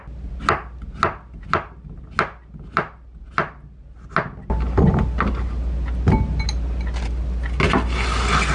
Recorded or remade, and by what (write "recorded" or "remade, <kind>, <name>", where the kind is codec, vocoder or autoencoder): recorded